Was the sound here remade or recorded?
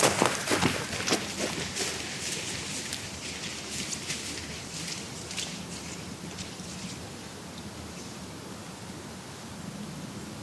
recorded